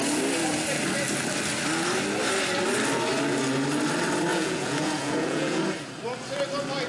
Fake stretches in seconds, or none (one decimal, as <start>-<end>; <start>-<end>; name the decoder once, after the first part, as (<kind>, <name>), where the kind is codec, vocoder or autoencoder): 4.3-5.6 (vocoder, Vocos)